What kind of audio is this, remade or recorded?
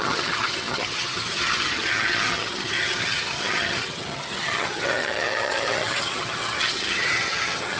remade